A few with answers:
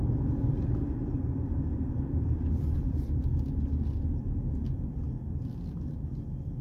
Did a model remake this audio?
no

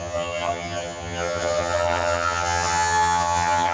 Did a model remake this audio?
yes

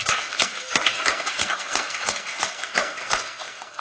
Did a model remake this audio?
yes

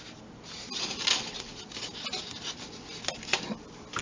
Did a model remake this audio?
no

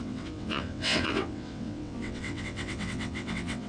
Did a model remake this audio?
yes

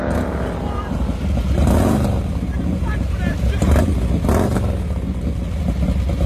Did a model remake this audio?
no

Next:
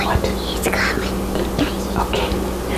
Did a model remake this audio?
no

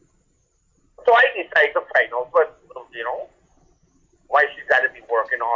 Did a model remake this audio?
no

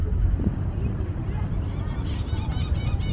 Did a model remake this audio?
no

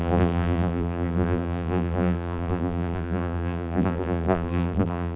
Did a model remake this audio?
yes